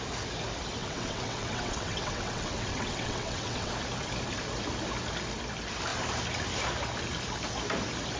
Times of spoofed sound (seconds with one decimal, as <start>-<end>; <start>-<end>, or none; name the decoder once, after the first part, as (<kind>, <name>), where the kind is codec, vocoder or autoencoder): 0.8-3.7 (vocoder, WaveNeXt)